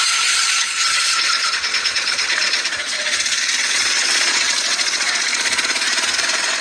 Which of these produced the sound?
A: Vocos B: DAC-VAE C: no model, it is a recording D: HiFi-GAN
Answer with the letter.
A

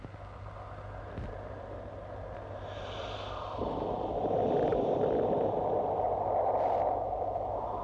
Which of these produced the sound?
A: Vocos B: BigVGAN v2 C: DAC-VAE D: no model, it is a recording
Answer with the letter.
D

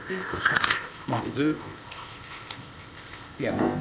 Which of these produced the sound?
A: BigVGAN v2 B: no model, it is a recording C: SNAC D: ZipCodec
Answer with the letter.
D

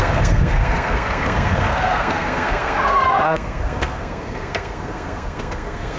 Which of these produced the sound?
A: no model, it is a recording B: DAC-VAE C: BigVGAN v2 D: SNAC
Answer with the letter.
D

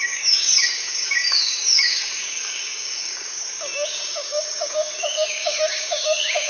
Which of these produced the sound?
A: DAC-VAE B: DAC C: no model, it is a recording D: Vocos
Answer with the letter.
B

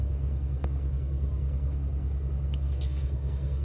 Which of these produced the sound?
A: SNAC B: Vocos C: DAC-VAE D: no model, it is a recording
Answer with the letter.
A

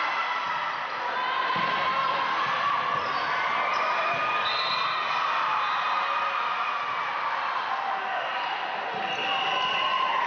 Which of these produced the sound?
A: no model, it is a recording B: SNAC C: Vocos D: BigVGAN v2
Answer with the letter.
A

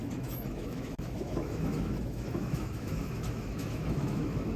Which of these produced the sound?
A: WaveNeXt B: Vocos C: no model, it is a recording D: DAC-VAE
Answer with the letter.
D